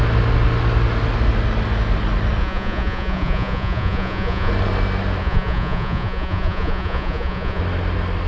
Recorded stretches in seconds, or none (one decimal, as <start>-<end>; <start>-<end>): 0.0-2.4; 4.5-5.2; 7.6-8.3